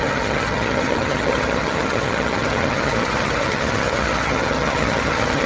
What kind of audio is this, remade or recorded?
remade